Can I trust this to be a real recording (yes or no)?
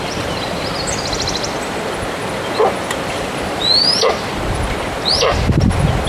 yes